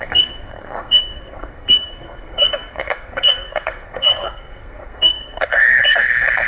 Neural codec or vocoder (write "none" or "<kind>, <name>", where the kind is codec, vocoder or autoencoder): codec, SNAC